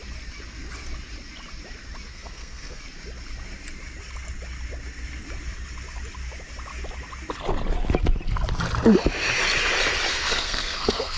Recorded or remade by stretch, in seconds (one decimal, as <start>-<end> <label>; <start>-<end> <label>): 0.0-2.1 recorded; 2.1-2.8 remade; 2.8-10.1 recorded; 10.1-11.2 remade

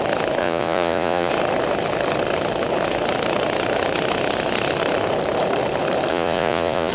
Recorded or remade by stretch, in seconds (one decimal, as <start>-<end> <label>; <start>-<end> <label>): 0.0-0.4 recorded; 0.4-1.3 remade; 1.3-6.1 recorded; 6.1-6.9 remade

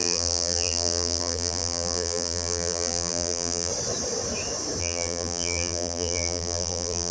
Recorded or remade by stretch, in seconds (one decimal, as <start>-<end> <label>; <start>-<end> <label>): 0.0-3.7 remade; 3.7-4.8 recorded; 4.8-7.1 remade

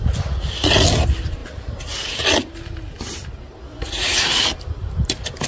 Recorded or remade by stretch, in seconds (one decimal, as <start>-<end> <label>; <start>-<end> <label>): 0.0-3.7 recorded; 3.7-4.4 remade; 4.4-5.5 recorded